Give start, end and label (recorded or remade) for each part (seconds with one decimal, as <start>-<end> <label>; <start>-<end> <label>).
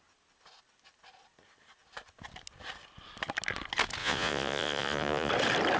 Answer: 0.0-4.0 recorded; 4.0-5.3 remade; 5.3-5.8 recorded